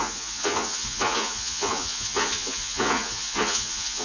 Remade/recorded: remade